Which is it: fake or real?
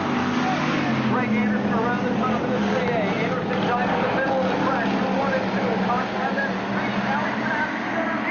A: real